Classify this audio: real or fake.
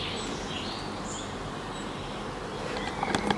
real